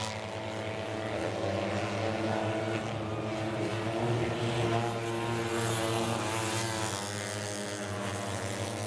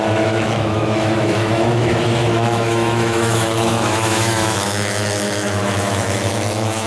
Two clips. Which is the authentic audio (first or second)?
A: first